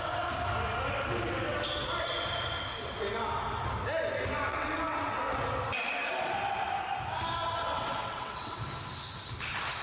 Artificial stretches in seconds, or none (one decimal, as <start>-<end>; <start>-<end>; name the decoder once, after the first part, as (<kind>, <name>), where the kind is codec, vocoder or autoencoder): 4.5-5.2 (vocoder, WaveNeXt); 7.6-8.6